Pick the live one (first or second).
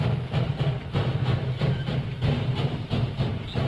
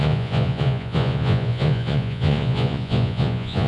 first